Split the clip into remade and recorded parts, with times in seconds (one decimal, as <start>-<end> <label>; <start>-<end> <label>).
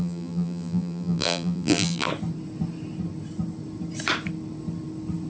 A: 0.0-2.1 remade; 2.1-5.3 recorded